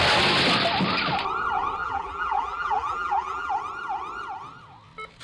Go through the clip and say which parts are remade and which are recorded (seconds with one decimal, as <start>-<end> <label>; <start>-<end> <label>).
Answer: 0.0-1.8 recorded; 1.8-3.5 remade; 3.5-5.2 recorded